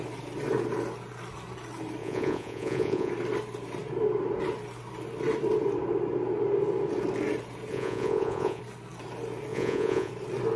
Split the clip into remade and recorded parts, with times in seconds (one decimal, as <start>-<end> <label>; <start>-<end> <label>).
0.0-2.0 recorded; 2.0-3.1 remade; 3.1-7.7 recorded; 7.7-8.6 remade; 8.6-9.5 recorded; 9.5-10.1 remade; 10.1-10.6 recorded

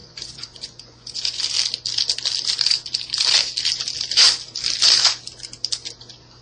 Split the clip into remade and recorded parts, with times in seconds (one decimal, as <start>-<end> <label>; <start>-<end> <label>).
0.0-1.4 remade; 1.4-6.4 recorded

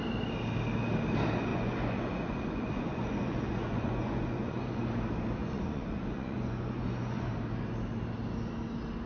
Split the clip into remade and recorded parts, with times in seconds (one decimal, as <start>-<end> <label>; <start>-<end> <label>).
0.0-1.5 recorded; 1.5-4.9 remade; 4.9-5.4 recorded; 5.4-7.3 remade; 7.3-9.1 recorded

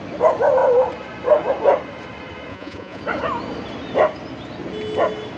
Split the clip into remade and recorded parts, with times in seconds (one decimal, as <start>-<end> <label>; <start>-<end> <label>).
0.0-2.5 recorded; 2.5-3.0 remade; 3.0-5.4 recorded

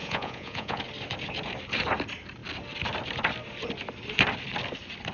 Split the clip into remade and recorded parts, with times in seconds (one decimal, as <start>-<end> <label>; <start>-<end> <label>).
0.0-0.8 remade; 0.8-5.1 recorded

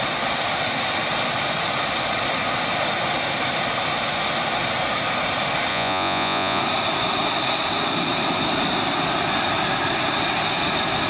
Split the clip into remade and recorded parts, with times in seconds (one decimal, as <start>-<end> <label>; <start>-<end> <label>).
0.0-5.7 recorded; 5.7-6.6 remade; 6.6-11.1 recorded

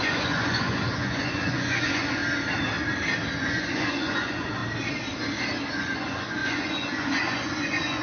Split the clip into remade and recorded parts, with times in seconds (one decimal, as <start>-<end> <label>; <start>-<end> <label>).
0.0-2.2 remade; 2.2-3.4 recorded; 3.4-4.6 remade; 4.6-5.7 recorded; 5.7-8.0 remade

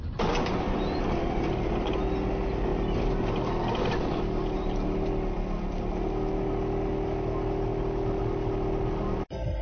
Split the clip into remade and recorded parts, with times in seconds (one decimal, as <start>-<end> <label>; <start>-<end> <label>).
0.0-9.6 recorded